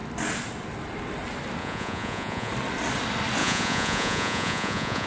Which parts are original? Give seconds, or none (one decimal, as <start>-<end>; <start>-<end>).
0.0-1.6; 2.5-3.4